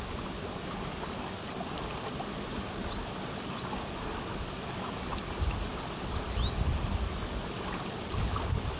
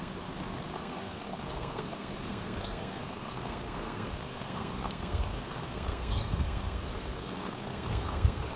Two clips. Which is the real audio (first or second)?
first